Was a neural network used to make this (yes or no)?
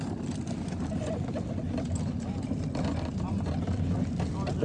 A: no